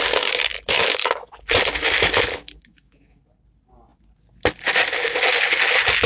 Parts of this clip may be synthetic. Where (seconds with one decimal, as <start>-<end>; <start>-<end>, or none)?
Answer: 0.5-1.3; 1.8-3.2